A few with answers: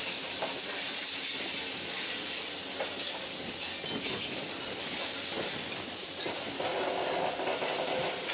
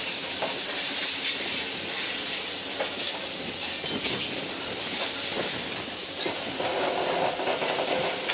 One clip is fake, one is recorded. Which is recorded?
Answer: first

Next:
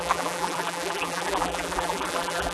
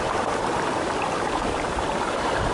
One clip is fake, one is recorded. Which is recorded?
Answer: second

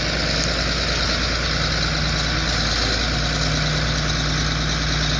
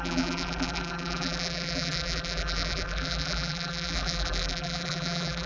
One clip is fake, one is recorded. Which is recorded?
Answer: first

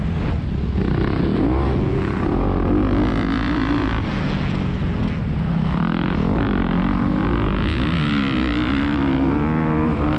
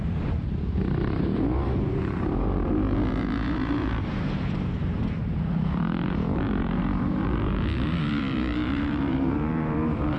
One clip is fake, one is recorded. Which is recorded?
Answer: first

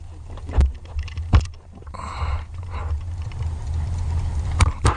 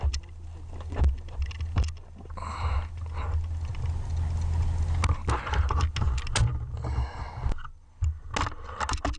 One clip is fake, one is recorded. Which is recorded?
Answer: second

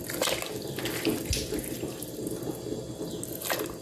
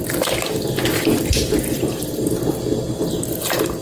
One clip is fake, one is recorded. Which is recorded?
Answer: first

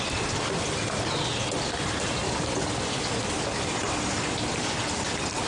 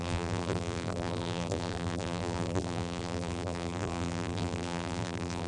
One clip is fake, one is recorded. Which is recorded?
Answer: first